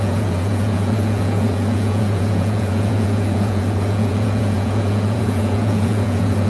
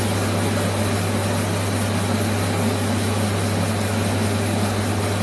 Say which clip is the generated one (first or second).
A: first